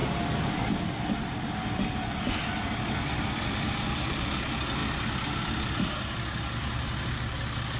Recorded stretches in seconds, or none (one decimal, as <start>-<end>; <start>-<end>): 0.0-7.8